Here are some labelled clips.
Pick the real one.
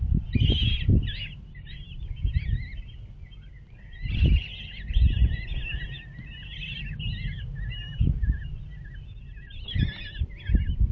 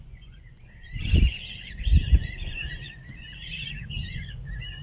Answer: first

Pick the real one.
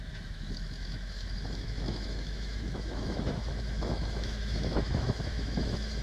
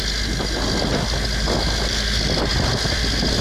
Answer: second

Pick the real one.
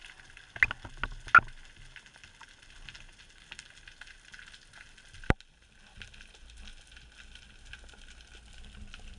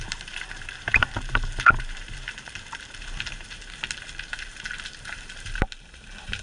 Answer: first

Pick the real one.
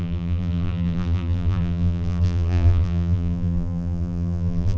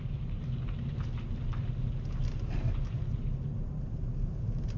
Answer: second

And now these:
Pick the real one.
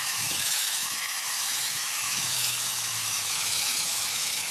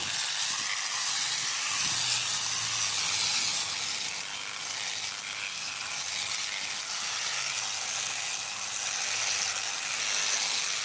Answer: second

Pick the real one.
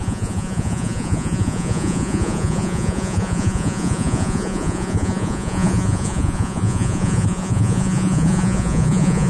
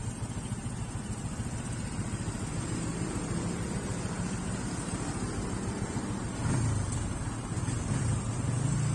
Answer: second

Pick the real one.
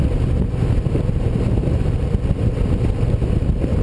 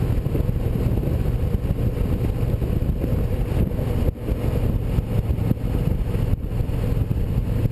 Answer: second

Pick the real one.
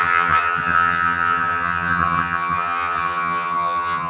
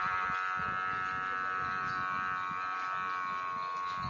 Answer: second